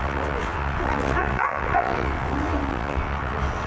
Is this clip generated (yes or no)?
yes